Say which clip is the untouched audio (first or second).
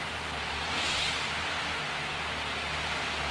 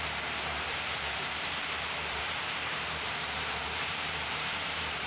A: first